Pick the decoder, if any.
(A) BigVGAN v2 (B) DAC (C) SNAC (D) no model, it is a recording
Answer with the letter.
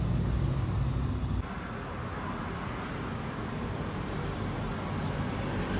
D